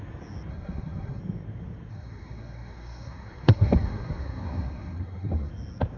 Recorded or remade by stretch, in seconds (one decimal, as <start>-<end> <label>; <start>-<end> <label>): 0.0-0.5 recorded; 0.5-1.2 remade; 1.2-1.9 recorded; 1.9-5.5 remade; 5.5-6.0 recorded